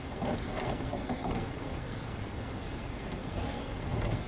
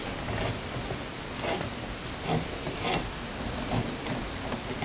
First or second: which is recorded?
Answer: second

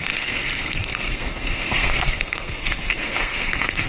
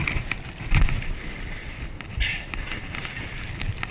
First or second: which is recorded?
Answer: second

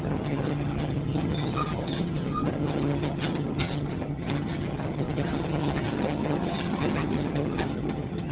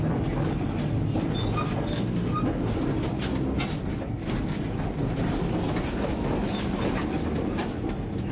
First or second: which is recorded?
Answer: second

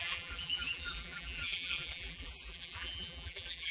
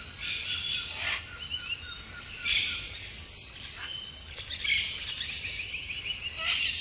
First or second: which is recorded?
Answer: second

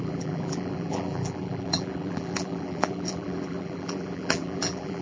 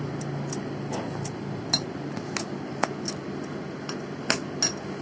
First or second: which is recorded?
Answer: second